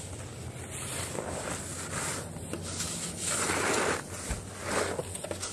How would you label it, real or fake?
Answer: real